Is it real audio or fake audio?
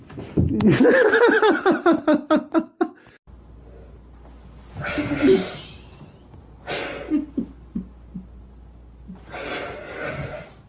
real